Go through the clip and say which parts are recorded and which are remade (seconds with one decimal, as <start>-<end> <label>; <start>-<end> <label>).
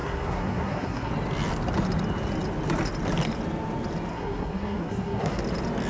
0.0-1.1 remade; 1.1-4.1 recorded; 4.1-5.4 remade; 5.4-5.9 recorded